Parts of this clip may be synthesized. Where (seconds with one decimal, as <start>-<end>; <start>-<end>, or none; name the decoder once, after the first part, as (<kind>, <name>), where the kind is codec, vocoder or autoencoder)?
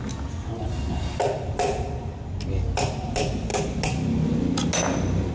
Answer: none